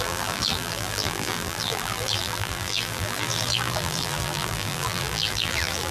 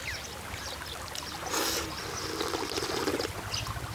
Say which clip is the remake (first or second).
first